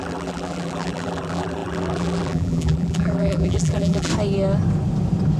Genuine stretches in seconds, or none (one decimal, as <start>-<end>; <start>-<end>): 4.1-5.4